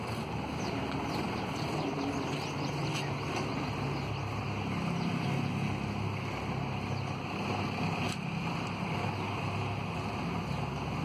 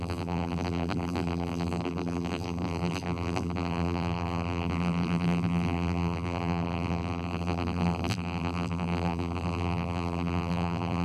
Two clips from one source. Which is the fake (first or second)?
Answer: second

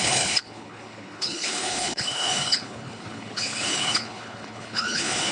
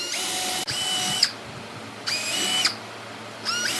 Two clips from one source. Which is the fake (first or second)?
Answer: first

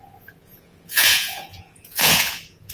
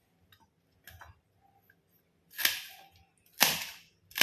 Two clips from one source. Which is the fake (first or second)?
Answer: first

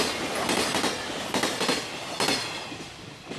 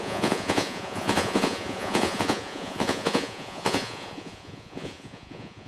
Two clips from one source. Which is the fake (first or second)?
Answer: second